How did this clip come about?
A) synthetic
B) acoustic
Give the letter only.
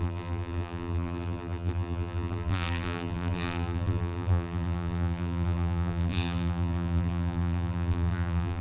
A